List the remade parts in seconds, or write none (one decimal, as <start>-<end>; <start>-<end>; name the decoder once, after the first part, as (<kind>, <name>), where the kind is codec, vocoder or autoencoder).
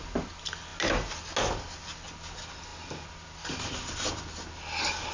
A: none